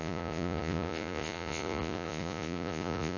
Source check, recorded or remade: remade